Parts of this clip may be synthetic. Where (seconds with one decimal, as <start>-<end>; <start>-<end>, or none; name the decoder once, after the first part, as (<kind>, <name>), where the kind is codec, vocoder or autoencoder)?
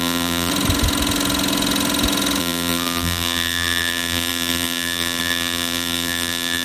0.0-0.5 (vocoder, BigVGAN v2); 2.4-6.6